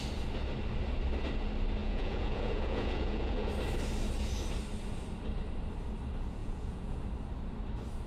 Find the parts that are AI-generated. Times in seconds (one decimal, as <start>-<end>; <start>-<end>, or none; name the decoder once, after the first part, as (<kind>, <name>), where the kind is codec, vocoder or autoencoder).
1.8-3.5 (vocoder, Vocos); 6.4-7.0